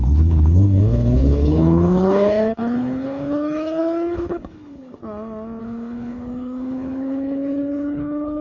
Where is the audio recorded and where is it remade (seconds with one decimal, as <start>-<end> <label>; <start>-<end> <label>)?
0.0-5.0 remade; 5.0-5.6 recorded; 5.6-8.4 remade